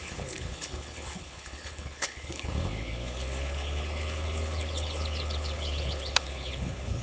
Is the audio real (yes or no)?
no